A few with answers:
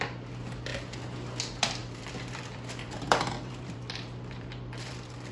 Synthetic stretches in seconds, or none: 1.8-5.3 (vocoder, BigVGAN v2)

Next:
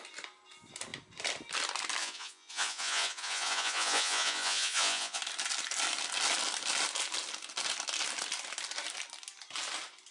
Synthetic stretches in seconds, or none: 2.0-5.2 (vocoder, Vocos)

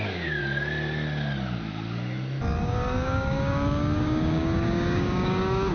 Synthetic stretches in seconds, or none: 0.0-0.4 (codec, DAC); 2.6-5.7

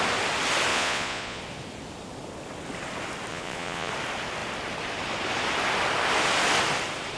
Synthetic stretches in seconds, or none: 0.7-1.4 (vocoder, Vocos); 3.3-3.9